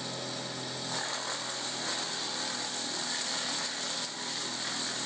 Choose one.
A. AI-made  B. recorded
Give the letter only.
B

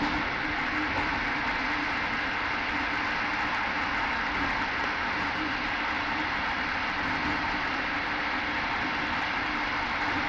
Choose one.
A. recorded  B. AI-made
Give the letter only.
A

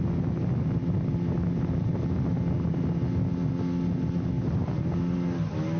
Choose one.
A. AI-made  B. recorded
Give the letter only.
B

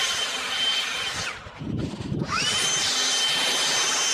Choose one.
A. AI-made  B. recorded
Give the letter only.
B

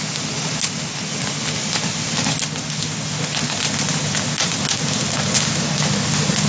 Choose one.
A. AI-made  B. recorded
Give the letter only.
B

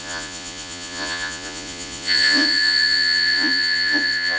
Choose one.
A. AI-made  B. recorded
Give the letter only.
A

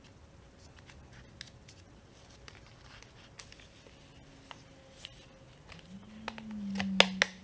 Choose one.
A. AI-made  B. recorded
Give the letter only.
B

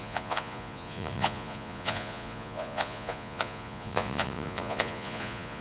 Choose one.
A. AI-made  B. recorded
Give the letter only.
A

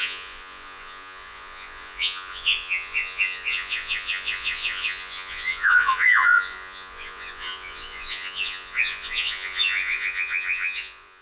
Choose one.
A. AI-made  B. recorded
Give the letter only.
A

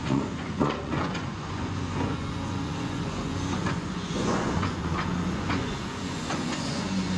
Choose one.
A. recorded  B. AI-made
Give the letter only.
B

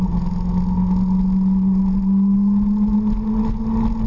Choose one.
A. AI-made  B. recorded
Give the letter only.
B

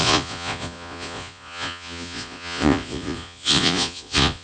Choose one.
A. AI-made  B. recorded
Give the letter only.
A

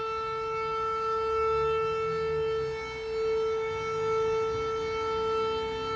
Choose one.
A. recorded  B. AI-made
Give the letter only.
A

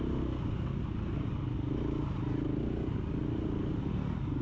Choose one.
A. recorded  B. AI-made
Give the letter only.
A